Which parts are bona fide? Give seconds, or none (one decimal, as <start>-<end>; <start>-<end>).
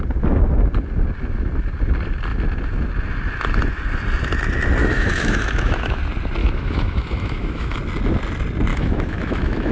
0.0-4.8; 6.0-6.4; 7.8-8.7